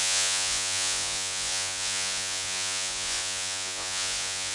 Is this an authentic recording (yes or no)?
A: no